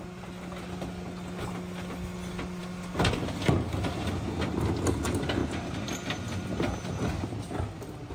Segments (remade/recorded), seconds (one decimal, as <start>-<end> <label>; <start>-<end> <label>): 0.0-5.4 recorded; 5.4-5.9 remade; 5.9-8.1 recorded